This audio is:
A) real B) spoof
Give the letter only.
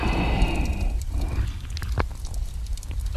A